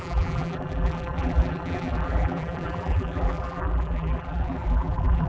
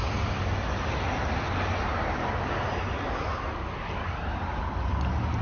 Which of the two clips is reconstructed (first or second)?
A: first